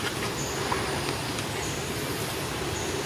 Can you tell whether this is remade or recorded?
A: recorded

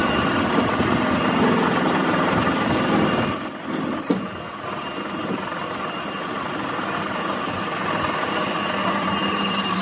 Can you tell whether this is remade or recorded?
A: recorded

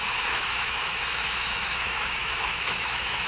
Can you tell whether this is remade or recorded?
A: remade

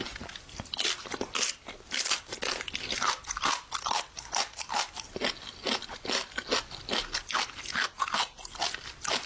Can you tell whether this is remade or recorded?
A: recorded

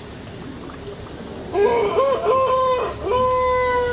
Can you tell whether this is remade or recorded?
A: recorded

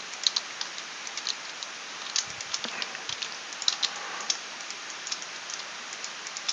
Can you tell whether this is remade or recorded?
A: recorded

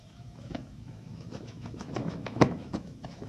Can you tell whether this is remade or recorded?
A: remade